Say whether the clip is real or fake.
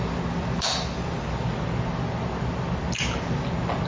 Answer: real